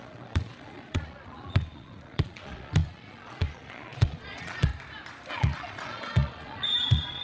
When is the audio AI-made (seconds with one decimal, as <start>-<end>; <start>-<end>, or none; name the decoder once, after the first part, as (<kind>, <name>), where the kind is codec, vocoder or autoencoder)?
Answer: 0.0-4.7 (vocoder, Vocos); 5.3-7.2